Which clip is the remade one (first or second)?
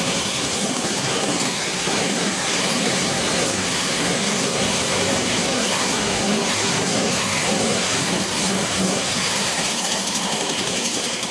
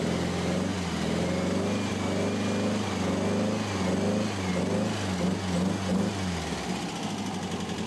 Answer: first